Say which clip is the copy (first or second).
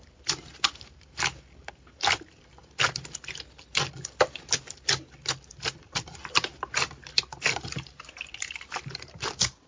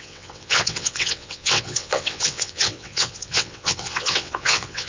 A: second